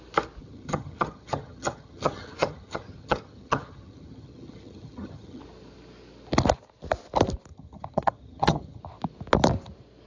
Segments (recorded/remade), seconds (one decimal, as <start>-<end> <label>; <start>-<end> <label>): 0.0-0.4 recorded; 0.4-5.4 remade; 5.4-7.5 recorded; 7.5-8.8 remade; 8.8-10.1 recorded